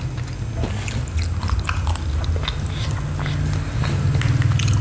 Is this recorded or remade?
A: recorded